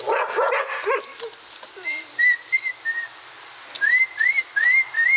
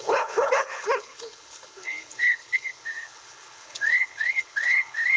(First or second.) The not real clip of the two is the second